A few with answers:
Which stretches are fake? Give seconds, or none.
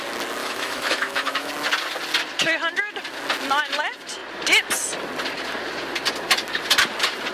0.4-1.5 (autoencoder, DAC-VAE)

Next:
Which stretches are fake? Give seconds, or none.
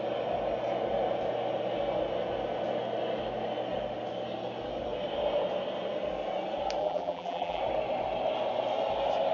6.8-7.6 (vocoder, BigVGAN v2)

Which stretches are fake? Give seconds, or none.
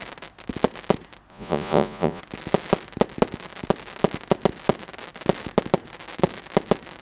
1.3-2.2 (vocoder, Vocos)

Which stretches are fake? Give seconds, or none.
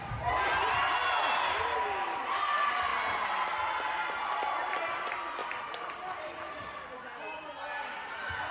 none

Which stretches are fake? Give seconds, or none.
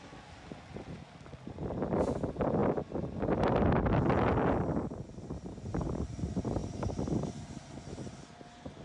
none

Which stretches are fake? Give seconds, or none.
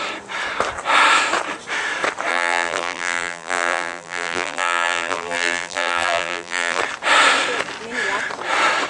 2.3-6.8 (vocoder, BigVGAN v2)